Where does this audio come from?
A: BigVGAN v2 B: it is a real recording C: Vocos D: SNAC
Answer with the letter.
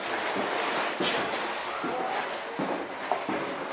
B